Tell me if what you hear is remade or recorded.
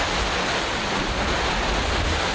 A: recorded